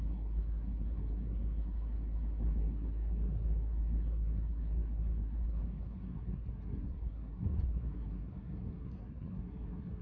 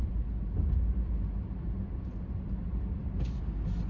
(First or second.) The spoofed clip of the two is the first